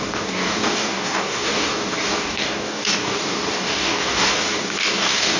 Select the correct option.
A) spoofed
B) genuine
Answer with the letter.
A